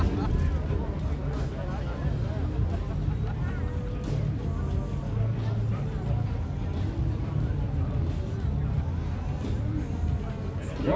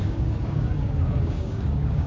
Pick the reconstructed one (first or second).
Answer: second